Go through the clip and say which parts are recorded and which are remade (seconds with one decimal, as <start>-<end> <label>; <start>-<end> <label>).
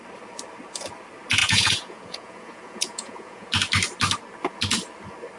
0.0-1.4 recorded; 1.4-3.5 remade; 3.5-5.4 recorded